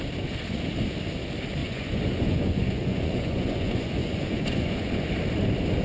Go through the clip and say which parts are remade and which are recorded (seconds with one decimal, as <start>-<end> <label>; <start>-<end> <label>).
0.0-1.6 recorded; 1.6-5.1 remade; 5.1-5.8 recorded